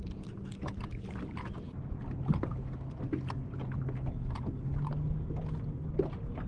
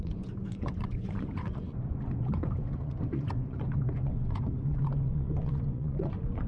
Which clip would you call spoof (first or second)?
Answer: second